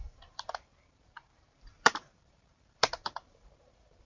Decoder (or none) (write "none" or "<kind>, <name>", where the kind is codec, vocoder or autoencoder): vocoder, BigVGAN v2